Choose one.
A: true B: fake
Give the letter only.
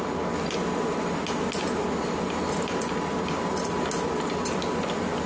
A